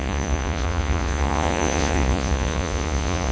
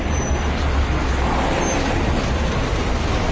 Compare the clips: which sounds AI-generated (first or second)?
first